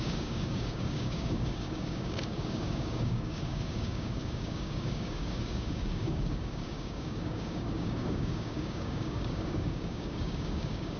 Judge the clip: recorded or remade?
remade